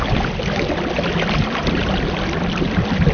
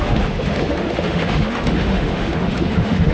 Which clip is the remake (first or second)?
second